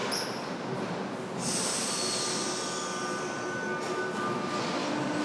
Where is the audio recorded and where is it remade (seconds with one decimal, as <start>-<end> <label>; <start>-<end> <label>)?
0.0-0.5 remade; 0.5-5.2 recorded